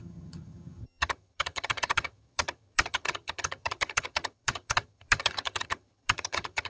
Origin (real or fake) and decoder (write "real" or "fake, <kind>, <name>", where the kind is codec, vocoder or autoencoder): fake, vocoder, HiFi-GAN